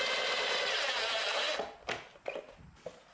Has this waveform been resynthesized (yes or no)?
no